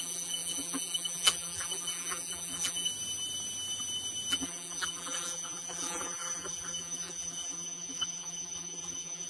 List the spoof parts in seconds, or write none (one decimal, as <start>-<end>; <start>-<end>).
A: 0.0-2.9; 4.3-9.3